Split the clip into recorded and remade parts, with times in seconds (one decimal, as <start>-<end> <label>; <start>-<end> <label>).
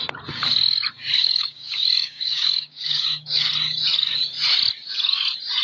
0.0-1.2 recorded; 1.2-3.5 remade; 3.5-5.6 recorded